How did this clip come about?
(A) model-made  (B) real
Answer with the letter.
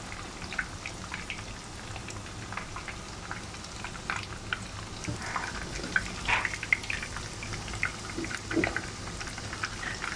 B